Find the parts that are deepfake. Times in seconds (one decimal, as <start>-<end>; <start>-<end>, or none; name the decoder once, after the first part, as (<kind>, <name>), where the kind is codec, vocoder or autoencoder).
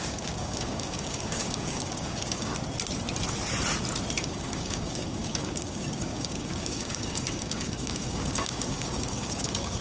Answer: 0.0-2.5 (codec, DAC); 4.2-9.8